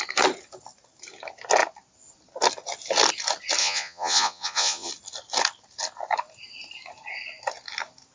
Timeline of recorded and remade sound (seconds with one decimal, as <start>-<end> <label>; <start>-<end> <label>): 0.0-3.6 recorded; 3.6-4.9 remade; 4.9-8.1 recorded